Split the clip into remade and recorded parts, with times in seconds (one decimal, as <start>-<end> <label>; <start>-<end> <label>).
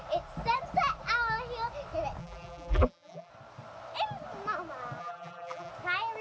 0.0-2.2 recorded; 2.2-3.3 remade; 3.3-5.0 recorded; 5.0-5.7 remade; 5.7-6.2 recorded